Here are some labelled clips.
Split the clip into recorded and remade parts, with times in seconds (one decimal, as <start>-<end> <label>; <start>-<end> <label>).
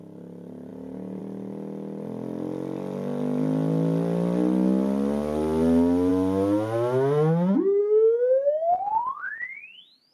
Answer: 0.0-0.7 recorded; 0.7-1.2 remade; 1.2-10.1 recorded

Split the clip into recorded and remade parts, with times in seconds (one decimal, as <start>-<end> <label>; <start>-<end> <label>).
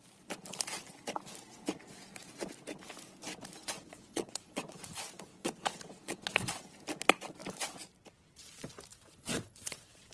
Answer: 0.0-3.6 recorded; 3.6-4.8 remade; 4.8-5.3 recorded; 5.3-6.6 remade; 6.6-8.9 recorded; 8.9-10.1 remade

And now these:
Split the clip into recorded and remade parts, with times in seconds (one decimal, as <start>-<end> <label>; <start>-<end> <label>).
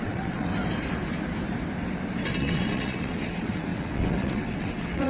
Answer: 0.0-0.5 remade; 0.5-2.4 recorded; 2.4-5.1 remade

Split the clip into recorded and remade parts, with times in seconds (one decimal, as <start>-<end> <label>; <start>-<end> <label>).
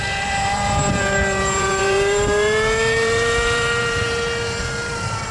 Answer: 0.0-5.3 remade